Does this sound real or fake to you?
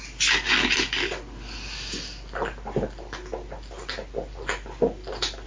real